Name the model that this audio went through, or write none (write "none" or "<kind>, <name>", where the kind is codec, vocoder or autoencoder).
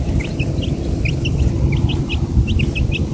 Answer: none